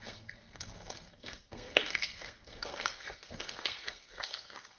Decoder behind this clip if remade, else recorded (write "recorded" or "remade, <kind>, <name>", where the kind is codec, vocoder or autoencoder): remade, codec, SNAC